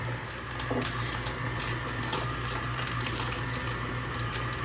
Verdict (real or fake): fake